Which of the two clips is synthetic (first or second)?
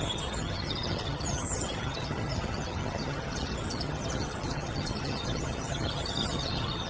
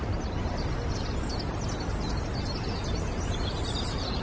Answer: first